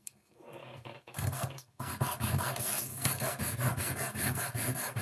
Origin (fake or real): fake